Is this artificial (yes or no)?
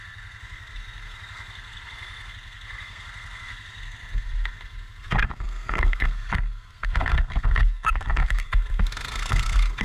yes